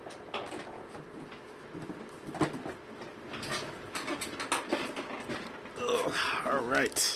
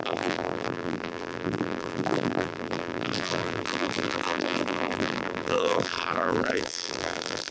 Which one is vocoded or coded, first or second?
second